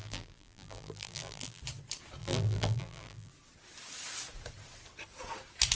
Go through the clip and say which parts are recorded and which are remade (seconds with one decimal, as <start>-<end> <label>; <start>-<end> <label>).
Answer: 0.0-1.6 remade; 1.6-2.2 recorded; 2.2-3.3 remade; 3.3-5.7 recorded